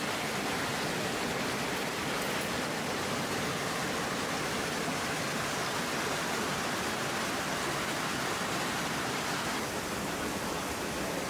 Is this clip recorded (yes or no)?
yes